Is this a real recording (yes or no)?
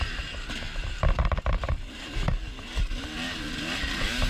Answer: no